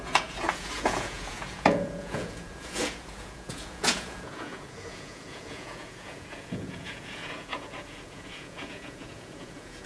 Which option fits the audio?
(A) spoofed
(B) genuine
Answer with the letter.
A